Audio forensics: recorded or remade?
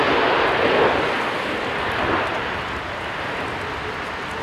recorded